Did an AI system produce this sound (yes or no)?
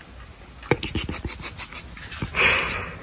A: no